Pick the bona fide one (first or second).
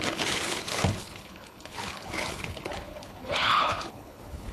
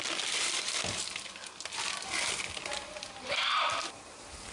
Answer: second